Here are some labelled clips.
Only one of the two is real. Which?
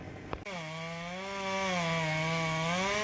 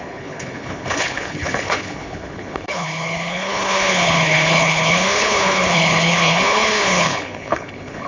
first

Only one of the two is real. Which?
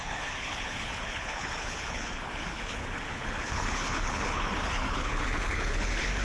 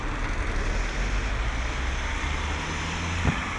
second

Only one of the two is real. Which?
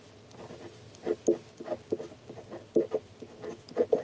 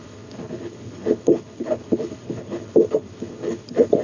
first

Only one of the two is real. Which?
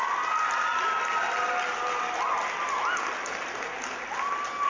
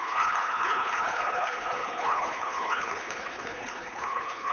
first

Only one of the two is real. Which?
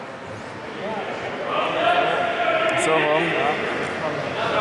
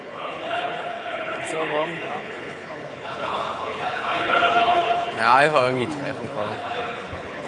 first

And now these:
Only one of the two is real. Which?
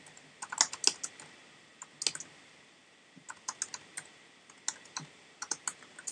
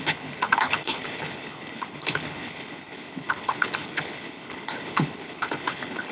first